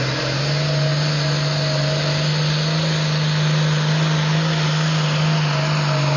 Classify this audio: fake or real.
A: real